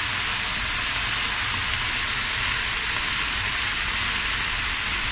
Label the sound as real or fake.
real